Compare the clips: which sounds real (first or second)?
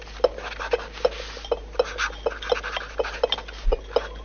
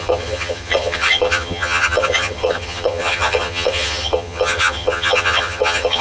first